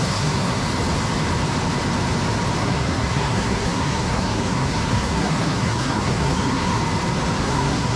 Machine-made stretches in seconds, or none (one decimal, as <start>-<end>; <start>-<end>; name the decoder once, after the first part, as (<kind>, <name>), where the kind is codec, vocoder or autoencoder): 0.0-0.6 (codec, SNAC); 2.6-6.8; 7.4-8.0